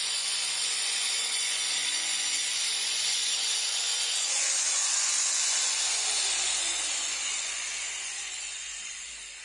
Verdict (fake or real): fake